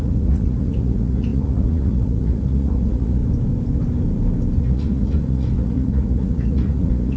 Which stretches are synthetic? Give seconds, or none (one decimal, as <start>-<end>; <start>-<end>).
0.0-3.2; 4.6-7.2